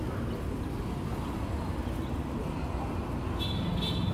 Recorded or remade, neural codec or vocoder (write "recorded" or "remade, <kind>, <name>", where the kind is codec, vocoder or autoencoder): recorded